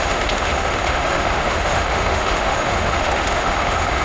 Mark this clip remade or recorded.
remade